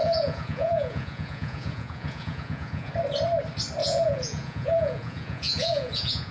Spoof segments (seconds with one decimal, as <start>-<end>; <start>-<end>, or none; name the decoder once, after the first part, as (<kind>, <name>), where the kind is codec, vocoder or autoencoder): 0.0-2.9 (vocoder, Vocos); 3.8-6.3